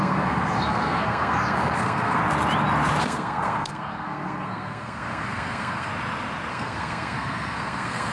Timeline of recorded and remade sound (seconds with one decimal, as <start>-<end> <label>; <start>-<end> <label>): 0.0-2.2 remade; 2.2-3.0 recorded; 3.0-5.9 remade; 5.9-6.5 recorded; 6.5-8.1 remade